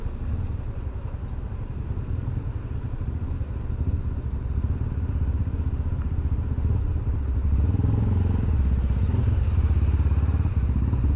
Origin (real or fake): real